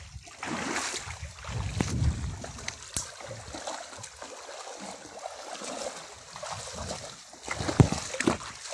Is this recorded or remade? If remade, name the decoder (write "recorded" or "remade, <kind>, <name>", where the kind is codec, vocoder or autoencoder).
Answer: recorded